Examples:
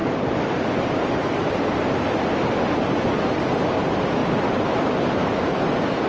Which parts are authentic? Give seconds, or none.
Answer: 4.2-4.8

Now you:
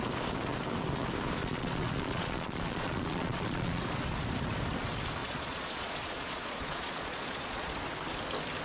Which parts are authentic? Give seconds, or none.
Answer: 0.0-1.4; 3.8-5.2; 7.7-8.6

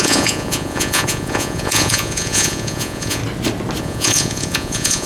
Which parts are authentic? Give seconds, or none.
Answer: 3.2-3.8